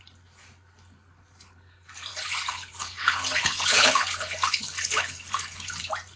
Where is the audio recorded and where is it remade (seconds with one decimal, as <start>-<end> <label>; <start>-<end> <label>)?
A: 0.0-2.1 recorded; 2.1-5.8 remade; 5.8-6.2 recorded